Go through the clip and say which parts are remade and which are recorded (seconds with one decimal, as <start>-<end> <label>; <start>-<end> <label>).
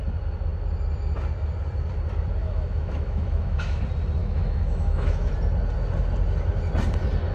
0.0-2.4 recorded; 2.4-3.8 remade; 3.8-4.2 recorded; 4.2-5.3 remade; 5.3-7.3 recorded